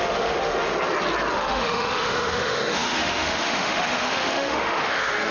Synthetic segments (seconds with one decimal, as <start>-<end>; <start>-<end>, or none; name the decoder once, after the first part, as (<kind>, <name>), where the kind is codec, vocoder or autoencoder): 0.0-0.7 (autoencoder, DAC-VAE); 1.3-5.3